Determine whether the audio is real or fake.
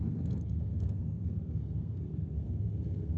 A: fake